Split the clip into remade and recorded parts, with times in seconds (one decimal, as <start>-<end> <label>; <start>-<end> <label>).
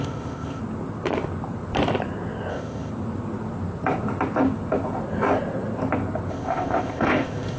0.0-0.6 remade; 0.6-2.5 recorded; 2.5-2.9 remade; 2.9-6.3 recorded; 6.3-7.6 remade